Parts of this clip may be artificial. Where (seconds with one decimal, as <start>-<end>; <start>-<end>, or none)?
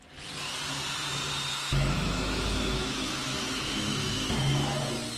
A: 1.7-4.8